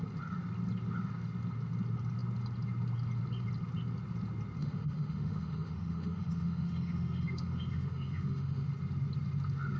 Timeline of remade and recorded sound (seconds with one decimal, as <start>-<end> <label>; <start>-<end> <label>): 0.0-4.6 recorded; 4.6-8.7 remade; 8.7-9.8 recorded